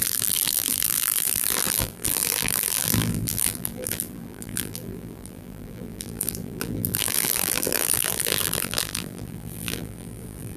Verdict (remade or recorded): remade